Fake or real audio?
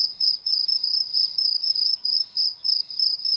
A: fake